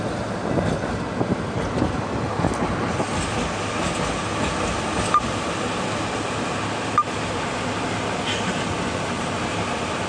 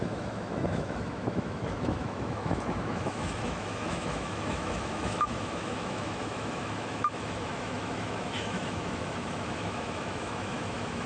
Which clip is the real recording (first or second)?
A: first